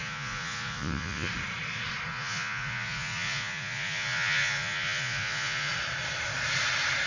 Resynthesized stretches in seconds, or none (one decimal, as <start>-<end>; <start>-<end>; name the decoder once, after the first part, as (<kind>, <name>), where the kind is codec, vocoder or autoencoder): 0.0-1.3 (vocoder, Vocos); 2.1-5.7